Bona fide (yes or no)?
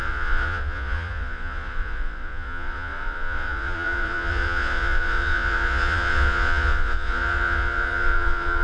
no